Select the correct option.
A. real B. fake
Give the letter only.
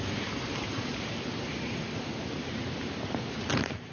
B